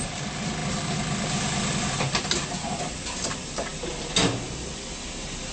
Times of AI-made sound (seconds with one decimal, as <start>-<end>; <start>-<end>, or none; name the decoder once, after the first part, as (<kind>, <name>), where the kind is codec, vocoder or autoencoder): none

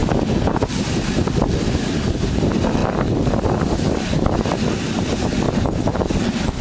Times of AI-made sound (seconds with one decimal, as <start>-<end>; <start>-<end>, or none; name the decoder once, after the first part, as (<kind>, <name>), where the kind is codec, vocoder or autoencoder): none

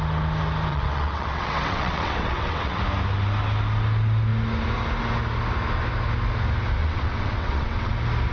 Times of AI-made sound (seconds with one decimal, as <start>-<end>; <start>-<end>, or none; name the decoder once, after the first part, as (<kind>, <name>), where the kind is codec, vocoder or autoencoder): 0.7-2.8 (vocoder, WaveNeXt); 6.8-7.9

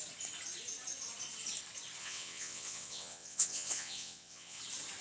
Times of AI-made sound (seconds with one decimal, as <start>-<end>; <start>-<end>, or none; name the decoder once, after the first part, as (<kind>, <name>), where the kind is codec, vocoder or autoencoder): 2.0-4.6 (vocoder, WaveNeXt)

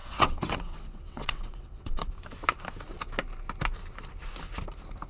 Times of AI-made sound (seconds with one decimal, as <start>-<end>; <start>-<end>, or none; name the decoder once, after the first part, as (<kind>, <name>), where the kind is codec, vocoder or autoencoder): 0.0-2.1 (vocoder, WaveNeXt)

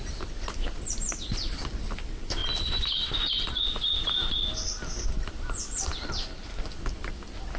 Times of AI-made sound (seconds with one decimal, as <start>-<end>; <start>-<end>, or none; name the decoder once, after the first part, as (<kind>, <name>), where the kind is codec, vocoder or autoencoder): none